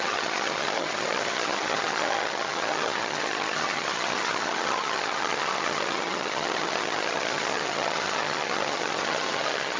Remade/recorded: remade